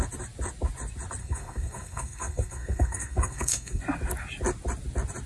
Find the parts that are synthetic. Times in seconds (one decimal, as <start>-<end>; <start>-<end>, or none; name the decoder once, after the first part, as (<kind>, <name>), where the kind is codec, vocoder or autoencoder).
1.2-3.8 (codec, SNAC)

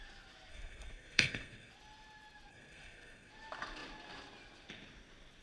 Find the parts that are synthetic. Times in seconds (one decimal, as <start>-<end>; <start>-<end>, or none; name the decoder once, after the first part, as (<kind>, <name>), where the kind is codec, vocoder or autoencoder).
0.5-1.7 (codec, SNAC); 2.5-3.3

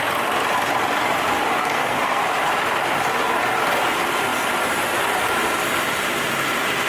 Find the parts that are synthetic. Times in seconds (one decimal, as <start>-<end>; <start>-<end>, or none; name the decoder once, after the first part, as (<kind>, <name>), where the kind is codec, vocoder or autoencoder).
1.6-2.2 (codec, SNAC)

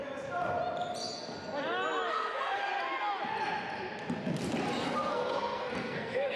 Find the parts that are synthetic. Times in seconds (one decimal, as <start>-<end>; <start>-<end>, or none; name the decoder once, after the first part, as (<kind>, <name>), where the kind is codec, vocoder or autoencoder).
2.1-2.7 (codec, SNAC); 4.8-6.4

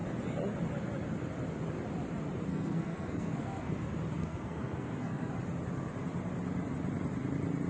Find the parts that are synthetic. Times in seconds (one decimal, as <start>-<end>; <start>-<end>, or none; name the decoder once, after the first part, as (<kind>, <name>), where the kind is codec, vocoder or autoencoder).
2.5-3.7 (codec, SNAC); 4.2-5.3

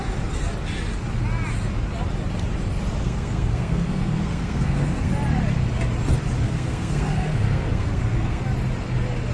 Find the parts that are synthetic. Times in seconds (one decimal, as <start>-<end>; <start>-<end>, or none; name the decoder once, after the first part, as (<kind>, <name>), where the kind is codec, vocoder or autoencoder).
3.0-5.1 (codec, SNAC); 6.4-8.4

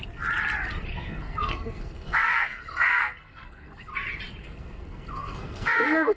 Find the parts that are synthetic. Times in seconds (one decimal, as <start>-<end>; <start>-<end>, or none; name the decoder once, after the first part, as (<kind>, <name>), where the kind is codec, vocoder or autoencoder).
0.9-3.9 (codec, SNAC); 4.4-6.2

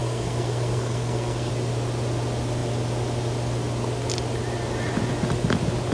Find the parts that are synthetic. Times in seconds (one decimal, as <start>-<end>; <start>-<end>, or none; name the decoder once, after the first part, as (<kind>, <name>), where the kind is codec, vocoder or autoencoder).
0.0-1.5 (codec, SNAC)